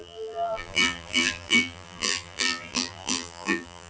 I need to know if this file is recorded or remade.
remade